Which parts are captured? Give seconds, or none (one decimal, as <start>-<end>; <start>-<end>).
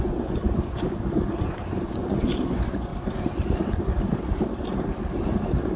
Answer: 0.8-1.4; 2.9-5.8